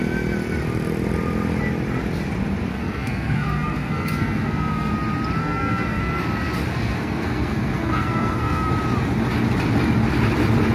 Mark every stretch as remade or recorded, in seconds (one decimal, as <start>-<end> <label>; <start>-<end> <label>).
0.0-2.7 recorded; 2.7-4.9 remade; 4.9-5.4 recorded; 5.4-6.0 remade; 6.0-6.7 recorded; 6.7-8.7 remade; 8.7-10.7 recorded